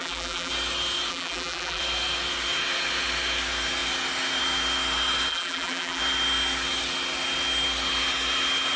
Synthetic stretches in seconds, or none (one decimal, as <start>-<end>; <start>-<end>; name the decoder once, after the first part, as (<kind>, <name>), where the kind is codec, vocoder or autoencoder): 0.0-0.5 (vocoder, BigVGAN v2); 1.1-1.8; 5.3-6.0